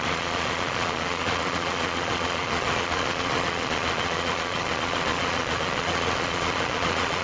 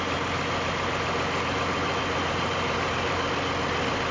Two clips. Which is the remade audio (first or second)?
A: first